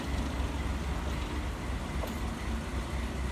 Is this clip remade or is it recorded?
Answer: recorded